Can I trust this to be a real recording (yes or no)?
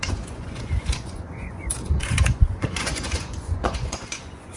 no